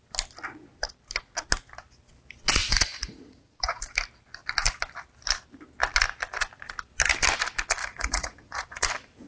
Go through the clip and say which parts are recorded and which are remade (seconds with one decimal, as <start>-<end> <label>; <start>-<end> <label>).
0.0-2.6 recorded; 2.6-3.8 remade; 3.8-7.8 recorded; 7.8-8.8 remade; 8.8-9.3 recorded